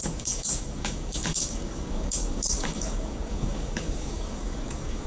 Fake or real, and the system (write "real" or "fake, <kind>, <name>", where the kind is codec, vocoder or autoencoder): fake, codec, DAC